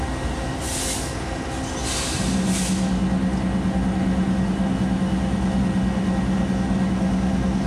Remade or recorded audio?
recorded